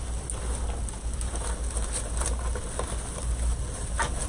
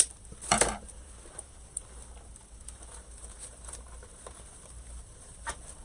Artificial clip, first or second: second